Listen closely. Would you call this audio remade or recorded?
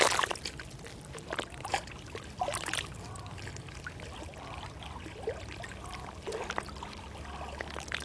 recorded